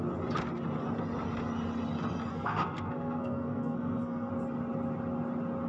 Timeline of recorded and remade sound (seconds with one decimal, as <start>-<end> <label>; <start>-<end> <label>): 0.0-2.3 recorded; 2.3-4.3 remade; 4.3-5.7 recorded